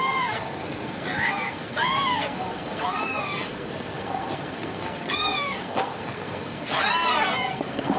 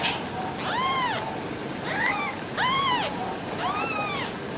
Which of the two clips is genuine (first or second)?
second